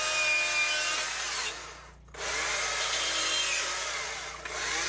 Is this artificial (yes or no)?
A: no